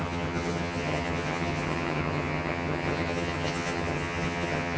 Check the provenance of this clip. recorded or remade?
remade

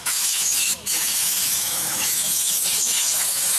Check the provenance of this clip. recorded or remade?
remade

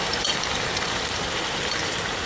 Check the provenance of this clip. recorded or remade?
remade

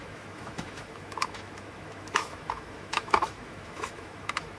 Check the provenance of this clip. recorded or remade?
remade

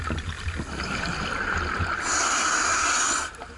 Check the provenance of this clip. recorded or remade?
recorded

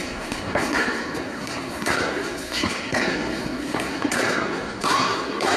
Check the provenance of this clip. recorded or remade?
remade